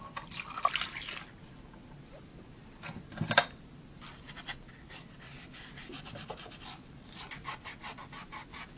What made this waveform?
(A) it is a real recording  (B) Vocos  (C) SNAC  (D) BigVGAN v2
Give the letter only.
A